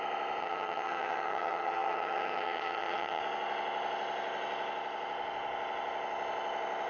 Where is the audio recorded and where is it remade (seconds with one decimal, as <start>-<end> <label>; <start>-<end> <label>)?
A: 0.0-0.4 recorded; 0.4-3.2 remade; 3.2-6.9 recorded

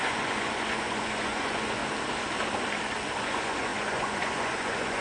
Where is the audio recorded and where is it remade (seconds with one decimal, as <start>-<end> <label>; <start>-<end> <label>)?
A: 0.0-1.8 remade; 1.8-3.2 recorded; 3.2-5.0 remade